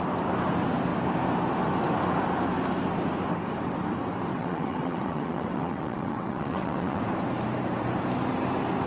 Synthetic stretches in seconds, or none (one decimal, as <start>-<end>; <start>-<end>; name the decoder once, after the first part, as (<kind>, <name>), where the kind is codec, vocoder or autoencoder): 4.3-7.0 (vocoder, WaveNeXt)